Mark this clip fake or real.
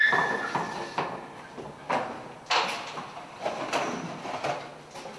real